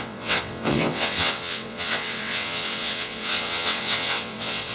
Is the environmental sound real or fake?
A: fake